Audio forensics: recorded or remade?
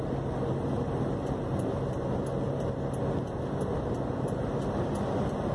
recorded